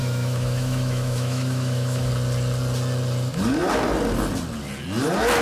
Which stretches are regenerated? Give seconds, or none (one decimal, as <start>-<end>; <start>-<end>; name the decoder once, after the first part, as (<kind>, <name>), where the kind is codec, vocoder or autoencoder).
0.0-2.1 (autoencoder, DAC-VAE)